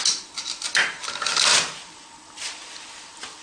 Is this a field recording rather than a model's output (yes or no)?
yes